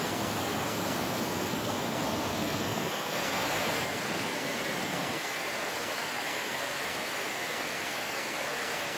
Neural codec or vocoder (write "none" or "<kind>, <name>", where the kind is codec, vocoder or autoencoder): codec, SNAC